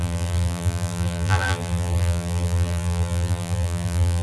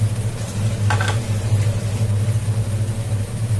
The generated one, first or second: first